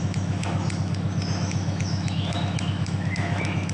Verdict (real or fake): fake